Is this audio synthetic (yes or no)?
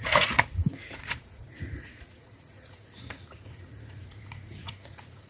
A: yes